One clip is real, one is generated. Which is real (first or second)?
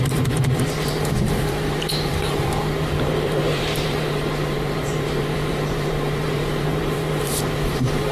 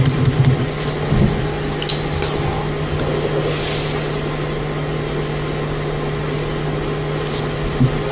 second